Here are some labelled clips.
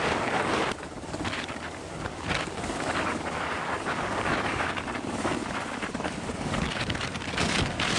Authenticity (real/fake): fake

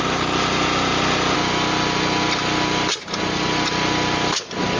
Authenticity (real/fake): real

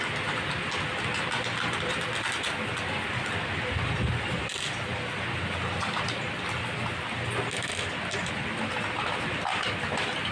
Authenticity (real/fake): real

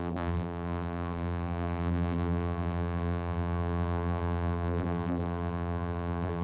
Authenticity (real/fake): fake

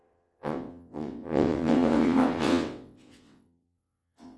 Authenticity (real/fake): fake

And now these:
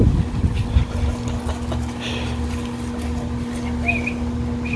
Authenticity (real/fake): real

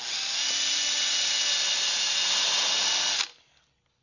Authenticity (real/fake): real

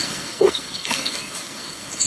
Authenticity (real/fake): fake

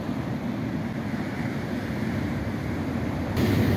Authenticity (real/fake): real